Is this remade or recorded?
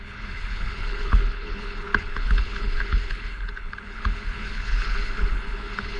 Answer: remade